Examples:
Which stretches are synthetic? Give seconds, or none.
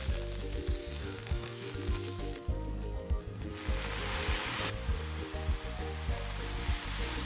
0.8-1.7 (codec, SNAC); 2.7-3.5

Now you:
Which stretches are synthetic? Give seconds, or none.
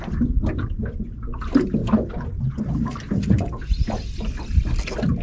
none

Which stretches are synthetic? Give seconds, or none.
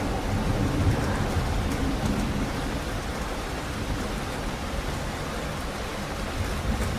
none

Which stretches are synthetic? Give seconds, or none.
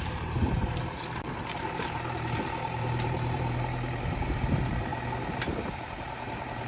0.0-4.9 (vocoder, BigVGAN v2); 5.7-6.7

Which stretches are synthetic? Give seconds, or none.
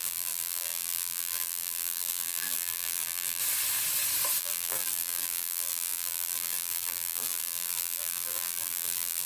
0.0-3.4 (vocoder, BigVGAN v2); 4.4-9.3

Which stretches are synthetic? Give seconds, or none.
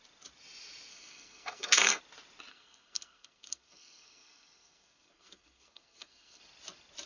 0.9-2.0 (codec, SNAC); 2.5-6.4